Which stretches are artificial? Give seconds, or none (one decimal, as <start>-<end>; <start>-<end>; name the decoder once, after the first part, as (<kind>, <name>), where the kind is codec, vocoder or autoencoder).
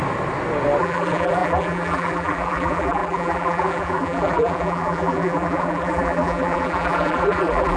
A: 0.8-7.8 (vocoder, BigVGAN v2)